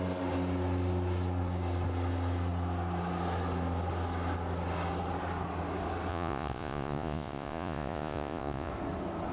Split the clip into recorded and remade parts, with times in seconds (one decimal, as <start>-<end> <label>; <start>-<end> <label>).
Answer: 0.0-6.1 recorded; 6.1-8.7 remade; 8.7-9.3 recorded